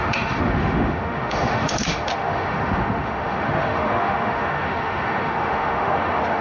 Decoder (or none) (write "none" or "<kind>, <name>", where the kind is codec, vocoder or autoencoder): autoencoder, DAC-VAE